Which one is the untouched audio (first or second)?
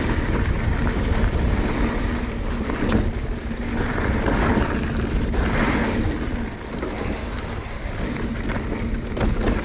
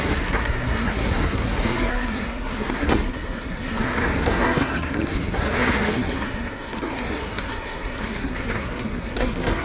first